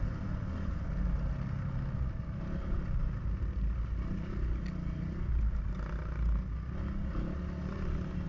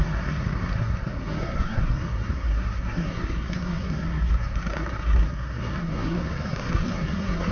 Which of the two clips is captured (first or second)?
first